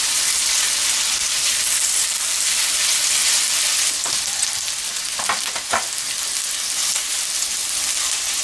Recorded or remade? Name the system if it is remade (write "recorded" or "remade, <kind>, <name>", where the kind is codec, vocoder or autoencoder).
recorded